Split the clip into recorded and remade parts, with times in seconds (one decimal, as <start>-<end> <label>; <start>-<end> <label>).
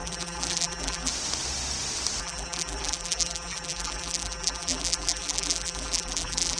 0.0-1.1 remade; 1.1-2.2 recorded; 2.2-6.6 remade